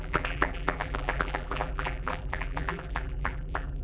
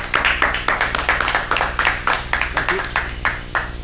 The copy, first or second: first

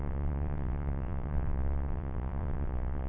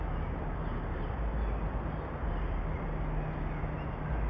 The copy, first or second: first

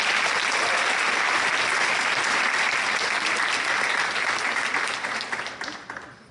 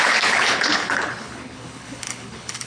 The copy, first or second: second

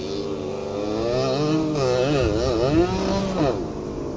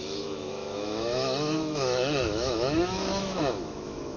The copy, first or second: second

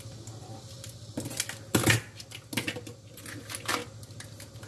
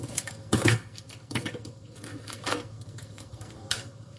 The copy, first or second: second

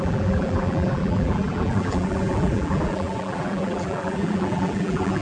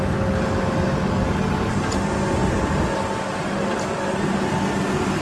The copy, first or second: first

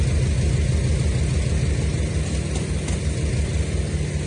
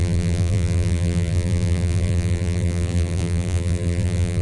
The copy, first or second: second